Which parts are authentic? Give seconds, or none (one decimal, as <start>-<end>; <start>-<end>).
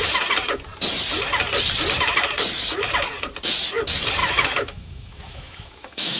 0.0-4.2